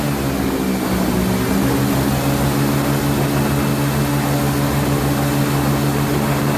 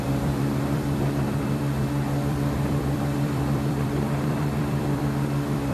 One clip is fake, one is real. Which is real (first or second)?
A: first